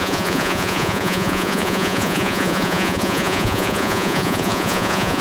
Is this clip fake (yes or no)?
yes